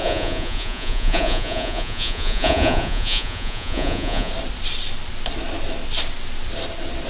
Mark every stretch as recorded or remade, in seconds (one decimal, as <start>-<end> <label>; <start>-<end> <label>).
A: 0.0-4.3 remade; 4.3-7.1 recorded

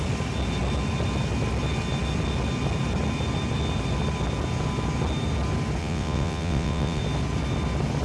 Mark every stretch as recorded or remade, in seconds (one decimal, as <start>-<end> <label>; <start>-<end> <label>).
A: 0.0-5.8 recorded; 5.8-7.0 remade; 7.0-8.0 recorded

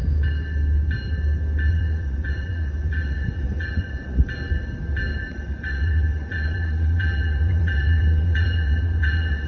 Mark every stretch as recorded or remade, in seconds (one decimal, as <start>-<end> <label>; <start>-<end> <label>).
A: 0.0-1.7 recorded; 1.7-4.2 remade; 4.2-5.2 recorded; 5.2-9.5 remade

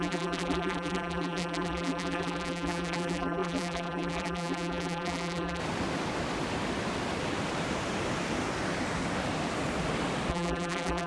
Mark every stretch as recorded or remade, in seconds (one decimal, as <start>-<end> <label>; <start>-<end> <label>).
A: 0.0-5.6 remade; 5.6-10.3 recorded; 10.3-11.1 remade